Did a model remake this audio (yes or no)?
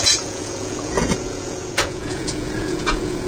yes